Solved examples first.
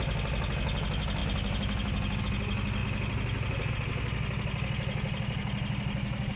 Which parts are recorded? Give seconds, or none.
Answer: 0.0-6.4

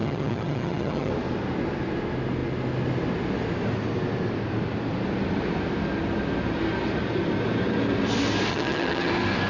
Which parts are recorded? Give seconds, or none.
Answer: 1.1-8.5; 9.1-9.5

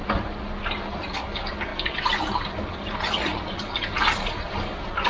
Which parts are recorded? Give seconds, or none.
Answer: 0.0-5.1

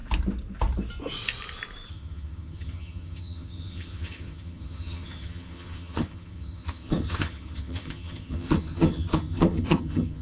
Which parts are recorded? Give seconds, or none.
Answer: 0.0-1.9

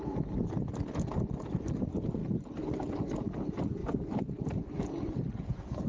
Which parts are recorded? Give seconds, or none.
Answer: 0.0-5.9

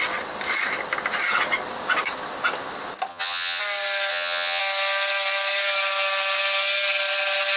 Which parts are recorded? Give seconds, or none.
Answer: 0.0-3.1; 3.6-4.1; 4.6-7.6